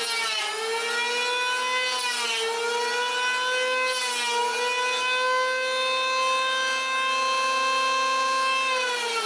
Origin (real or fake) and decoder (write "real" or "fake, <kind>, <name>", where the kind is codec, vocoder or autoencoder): real